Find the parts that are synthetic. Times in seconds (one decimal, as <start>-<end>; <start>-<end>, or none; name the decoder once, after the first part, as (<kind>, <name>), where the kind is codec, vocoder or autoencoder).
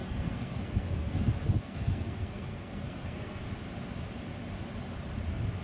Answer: 0.0-3.4 (codec, SNAC)